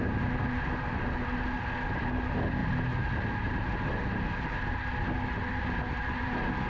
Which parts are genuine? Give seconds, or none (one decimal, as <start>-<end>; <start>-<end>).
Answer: 0.0-6.7